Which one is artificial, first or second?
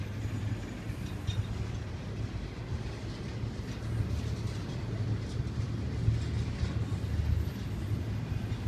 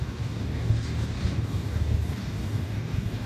second